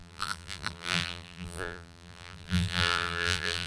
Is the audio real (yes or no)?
no